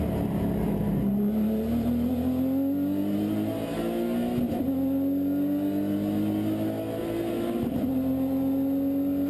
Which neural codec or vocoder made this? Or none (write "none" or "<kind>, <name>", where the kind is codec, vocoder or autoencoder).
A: none